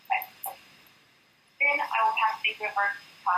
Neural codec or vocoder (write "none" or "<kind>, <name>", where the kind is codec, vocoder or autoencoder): none